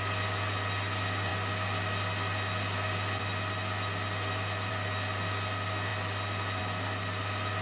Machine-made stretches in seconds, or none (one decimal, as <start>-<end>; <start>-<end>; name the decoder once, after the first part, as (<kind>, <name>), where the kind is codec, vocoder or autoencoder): none